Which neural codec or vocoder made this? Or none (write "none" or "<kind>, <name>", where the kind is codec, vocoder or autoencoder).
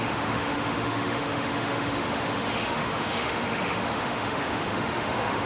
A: autoencoder, DAC-VAE